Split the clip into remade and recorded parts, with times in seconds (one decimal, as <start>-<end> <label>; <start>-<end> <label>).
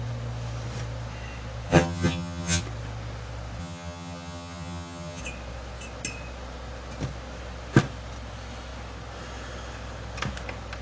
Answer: 0.0-1.7 recorded; 1.7-2.6 remade; 2.6-3.6 recorded; 3.6-5.2 remade; 5.2-10.8 recorded